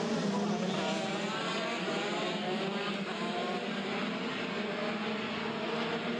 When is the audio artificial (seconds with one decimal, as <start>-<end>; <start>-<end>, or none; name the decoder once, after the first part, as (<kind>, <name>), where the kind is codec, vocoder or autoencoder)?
none